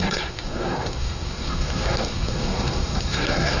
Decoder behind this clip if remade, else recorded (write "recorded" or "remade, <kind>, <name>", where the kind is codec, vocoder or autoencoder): remade, codec, SNAC